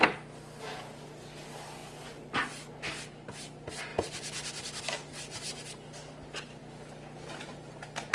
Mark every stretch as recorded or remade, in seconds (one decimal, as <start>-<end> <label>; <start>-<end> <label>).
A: 0.0-8.1 recorded